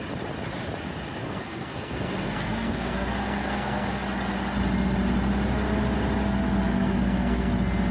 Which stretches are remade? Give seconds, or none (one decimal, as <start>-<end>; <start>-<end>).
1.2-4.0; 6.7-7.5